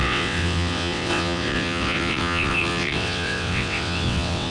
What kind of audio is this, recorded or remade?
remade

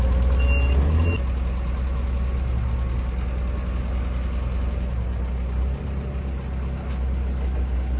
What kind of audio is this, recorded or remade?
recorded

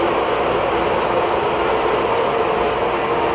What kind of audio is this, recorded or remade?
recorded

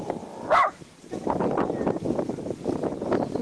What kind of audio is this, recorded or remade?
recorded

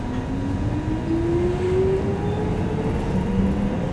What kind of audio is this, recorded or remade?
recorded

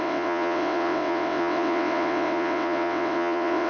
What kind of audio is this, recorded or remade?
remade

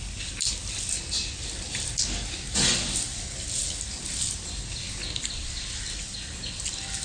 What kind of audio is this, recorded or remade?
recorded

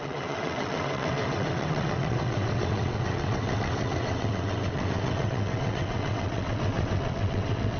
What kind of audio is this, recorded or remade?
remade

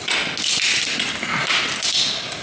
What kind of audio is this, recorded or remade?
recorded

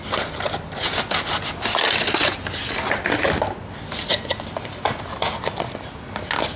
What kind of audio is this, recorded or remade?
recorded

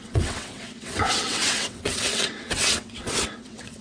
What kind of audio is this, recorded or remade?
remade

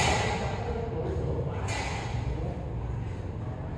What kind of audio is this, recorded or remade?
recorded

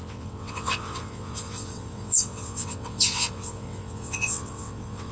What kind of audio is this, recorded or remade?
remade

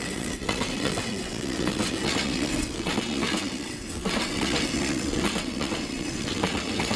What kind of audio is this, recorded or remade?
remade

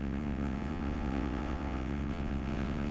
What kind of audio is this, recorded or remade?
remade